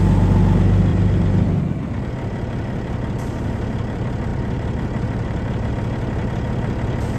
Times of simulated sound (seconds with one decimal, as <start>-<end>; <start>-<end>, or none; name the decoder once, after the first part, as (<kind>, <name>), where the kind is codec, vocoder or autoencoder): 0.9-2.1 (vocoder, BigVGAN v2); 4.3-5.7